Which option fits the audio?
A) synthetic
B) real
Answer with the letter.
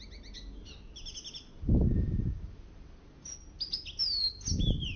B